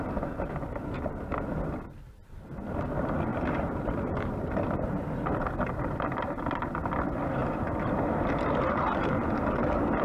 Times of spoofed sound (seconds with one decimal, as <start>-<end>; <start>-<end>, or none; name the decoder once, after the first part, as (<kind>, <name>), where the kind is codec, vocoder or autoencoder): 3.3-4.0 (vocoder, BigVGAN v2); 7.4-8.3